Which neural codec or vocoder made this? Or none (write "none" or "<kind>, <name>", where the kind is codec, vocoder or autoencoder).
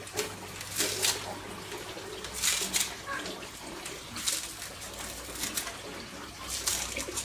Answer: none